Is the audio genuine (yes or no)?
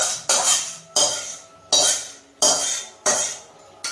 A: yes